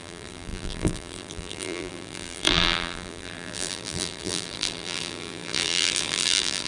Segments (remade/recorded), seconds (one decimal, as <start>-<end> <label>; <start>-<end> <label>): 0.0-6.7 remade